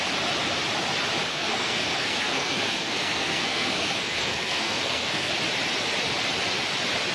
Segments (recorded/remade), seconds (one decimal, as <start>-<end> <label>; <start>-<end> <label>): 0.0-1.3 recorded; 1.3-5.3 remade; 5.3-7.1 recorded